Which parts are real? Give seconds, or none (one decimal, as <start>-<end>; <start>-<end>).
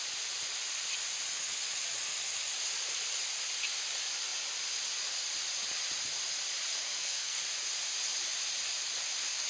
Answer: 0.0-6.8; 7.4-9.5